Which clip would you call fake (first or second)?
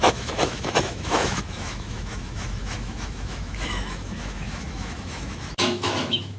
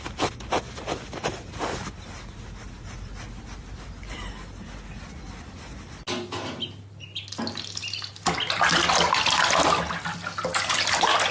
first